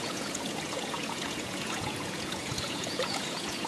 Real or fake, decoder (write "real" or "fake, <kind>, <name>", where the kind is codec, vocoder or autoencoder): fake, vocoder, Vocos